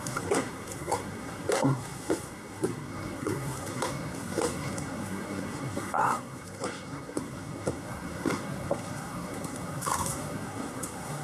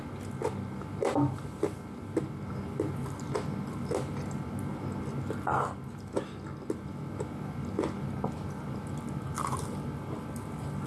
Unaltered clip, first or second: second